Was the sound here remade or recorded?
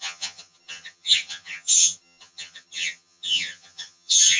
remade